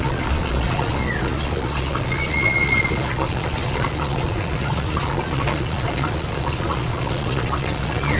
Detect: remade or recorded remade